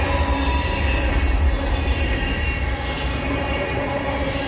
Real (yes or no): yes